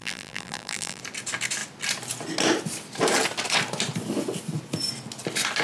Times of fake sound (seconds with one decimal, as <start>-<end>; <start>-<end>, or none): 0.0-1.0